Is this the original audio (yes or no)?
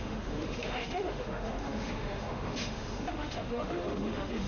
no